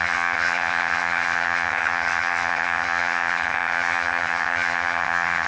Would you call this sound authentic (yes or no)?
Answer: no